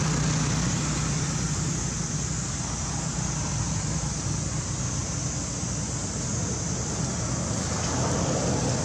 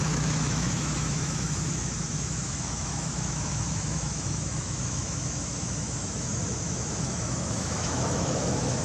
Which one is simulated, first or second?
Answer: second